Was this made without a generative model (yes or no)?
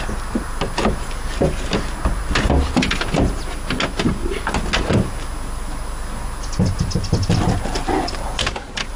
yes